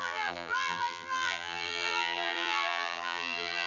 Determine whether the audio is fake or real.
fake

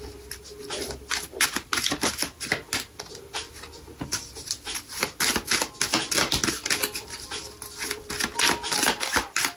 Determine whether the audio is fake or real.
real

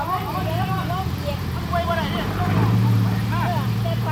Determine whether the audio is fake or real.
fake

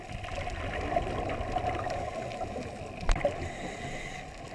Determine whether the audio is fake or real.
real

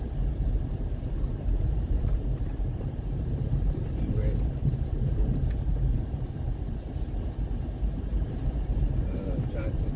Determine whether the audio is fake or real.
fake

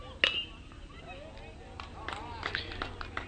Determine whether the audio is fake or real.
real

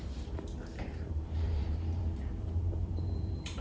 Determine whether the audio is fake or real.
fake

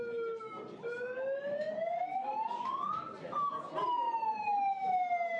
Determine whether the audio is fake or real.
real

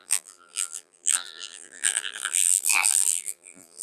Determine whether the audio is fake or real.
fake